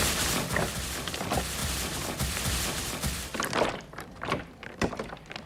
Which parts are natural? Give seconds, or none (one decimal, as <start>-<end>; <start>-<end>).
0.0-1.6; 4.9-5.5